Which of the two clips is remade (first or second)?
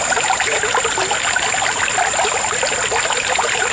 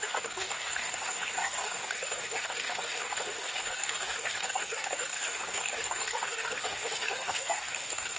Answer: second